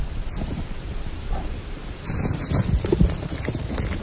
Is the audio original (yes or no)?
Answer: no